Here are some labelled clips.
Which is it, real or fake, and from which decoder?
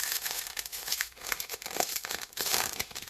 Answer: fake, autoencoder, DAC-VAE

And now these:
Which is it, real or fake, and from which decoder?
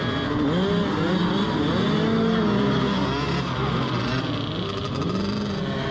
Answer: real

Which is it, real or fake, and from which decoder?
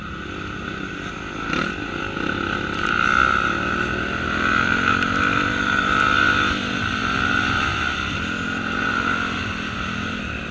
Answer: real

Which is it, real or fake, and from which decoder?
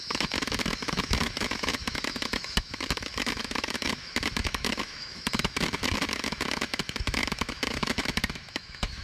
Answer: fake, autoencoder, DAC-VAE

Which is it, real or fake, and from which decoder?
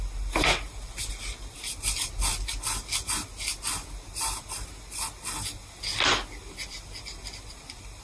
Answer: real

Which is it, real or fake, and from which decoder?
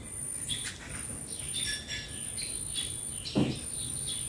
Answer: real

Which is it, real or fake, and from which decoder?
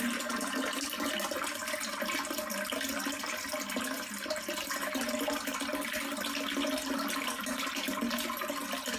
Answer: real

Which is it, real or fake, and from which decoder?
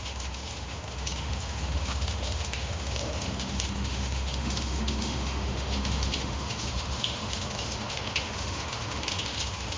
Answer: fake, autoencoder, DAC-VAE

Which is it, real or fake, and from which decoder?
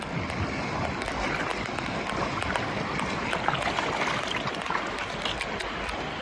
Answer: real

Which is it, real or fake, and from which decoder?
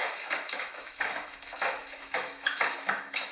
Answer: fake, autoencoder, DAC-VAE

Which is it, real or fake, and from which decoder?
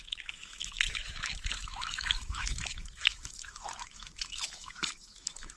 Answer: fake, autoencoder, DAC-VAE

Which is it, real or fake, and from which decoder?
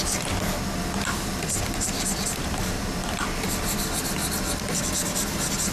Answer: real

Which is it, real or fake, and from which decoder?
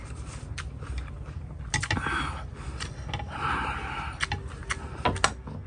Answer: real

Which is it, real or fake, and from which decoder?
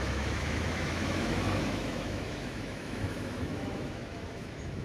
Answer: fake, autoencoder, DAC-VAE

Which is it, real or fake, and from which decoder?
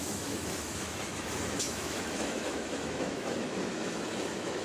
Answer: fake, autoencoder, DAC-VAE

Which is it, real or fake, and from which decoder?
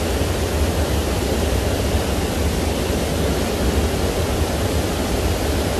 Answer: real